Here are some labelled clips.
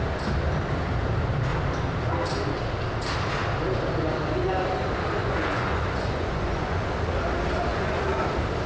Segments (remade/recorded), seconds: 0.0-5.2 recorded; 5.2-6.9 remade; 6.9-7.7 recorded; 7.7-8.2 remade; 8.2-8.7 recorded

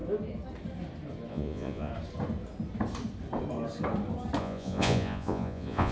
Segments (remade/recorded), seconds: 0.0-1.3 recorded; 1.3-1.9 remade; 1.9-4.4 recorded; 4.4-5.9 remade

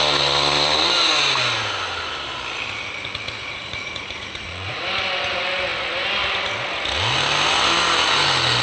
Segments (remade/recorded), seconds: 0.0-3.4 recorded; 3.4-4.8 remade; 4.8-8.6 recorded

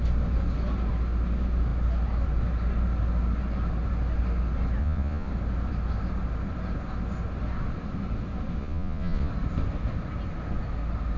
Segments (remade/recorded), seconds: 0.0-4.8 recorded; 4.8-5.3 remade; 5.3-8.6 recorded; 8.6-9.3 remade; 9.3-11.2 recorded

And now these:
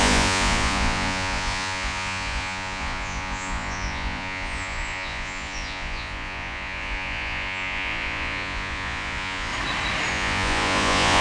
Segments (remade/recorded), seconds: 0.0-9.5 remade; 9.5-10.1 recorded; 10.1-11.2 remade